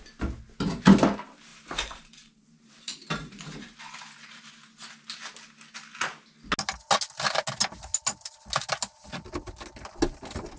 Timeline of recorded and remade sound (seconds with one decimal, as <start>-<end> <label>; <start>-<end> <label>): 0.0-1.5 recorded; 1.5-4.5 remade; 4.5-10.6 recorded